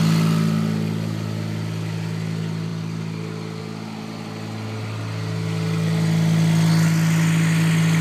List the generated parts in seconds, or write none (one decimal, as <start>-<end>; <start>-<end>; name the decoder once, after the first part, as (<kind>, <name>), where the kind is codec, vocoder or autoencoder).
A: none